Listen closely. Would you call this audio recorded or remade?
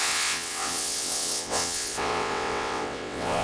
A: remade